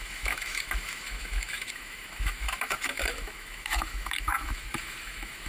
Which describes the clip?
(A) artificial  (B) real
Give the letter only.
A